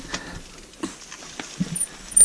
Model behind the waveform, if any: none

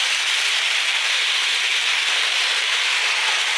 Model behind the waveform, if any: none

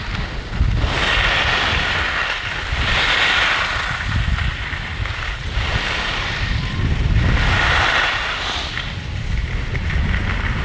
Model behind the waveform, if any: none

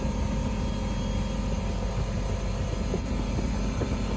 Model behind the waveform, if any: none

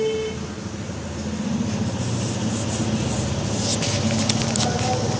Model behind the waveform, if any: none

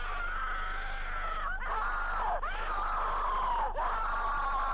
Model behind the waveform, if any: none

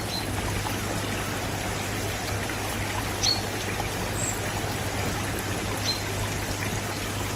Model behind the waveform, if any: none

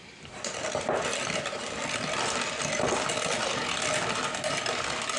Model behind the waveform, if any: vocoder, BigVGAN v2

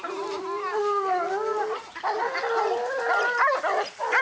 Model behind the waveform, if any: none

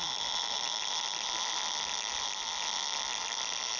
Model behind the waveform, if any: none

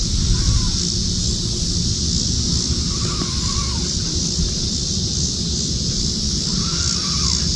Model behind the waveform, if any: none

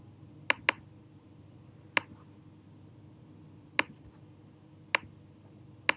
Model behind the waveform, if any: none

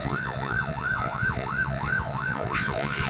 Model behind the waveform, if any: vocoder, WaveNeXt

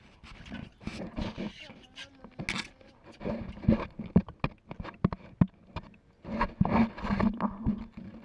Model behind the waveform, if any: none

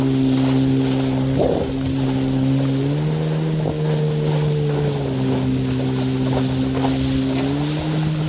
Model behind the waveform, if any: none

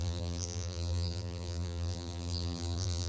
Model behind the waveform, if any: vocoder, BigVGAN v2